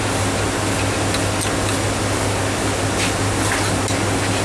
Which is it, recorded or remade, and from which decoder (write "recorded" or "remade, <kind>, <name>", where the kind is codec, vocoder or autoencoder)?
recorded